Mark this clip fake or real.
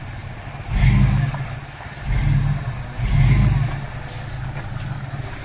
real